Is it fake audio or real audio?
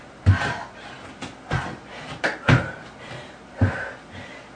real